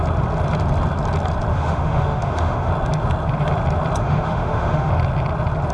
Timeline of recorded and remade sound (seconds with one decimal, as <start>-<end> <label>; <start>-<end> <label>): 0.0-1.5 recorded; 1.5-2.7 remade; 2.7-4.0 recorded; 4.0-4.9 remade; 4.9-5.7 recorded